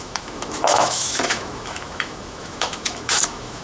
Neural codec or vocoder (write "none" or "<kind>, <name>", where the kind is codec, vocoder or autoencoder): autoencoder, DAC-VAE